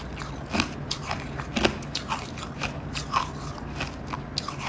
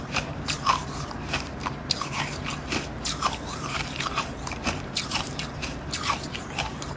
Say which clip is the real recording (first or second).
first